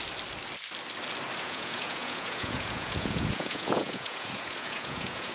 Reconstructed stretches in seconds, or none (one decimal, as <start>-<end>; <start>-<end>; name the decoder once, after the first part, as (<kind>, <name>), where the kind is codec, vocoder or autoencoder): 1.4-5.3 (vocoder, Vocos)